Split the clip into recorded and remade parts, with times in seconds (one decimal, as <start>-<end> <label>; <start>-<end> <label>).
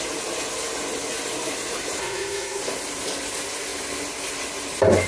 0.0-2.0 recorded; 2.0-2.6 remade; 2.6-5.1 recorded